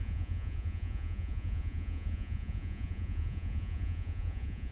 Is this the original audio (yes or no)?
no